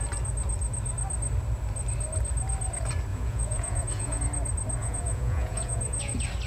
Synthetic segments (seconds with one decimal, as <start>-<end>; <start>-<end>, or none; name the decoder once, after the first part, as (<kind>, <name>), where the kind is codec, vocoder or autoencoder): 3.1-4.2 (vocoder, Vocos); 4.8-6.1